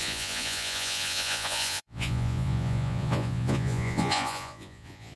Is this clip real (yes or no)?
no